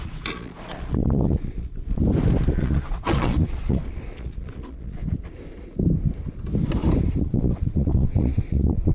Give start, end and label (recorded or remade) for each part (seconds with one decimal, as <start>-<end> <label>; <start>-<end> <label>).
0.0-2.0 remade; 2.0-2.5 recorded; 2.5-5.0 remade; 5.0-7.2 recorded; 7.2-8.9 remade